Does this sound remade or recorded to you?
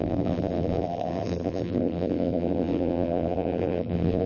remade